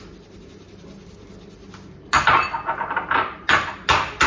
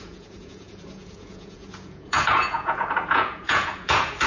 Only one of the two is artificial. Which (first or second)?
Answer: second